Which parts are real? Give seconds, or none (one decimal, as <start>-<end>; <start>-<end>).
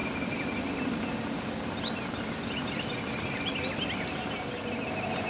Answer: 0.0-5.3